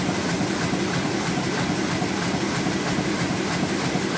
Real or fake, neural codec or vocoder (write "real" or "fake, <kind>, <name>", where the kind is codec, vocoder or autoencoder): real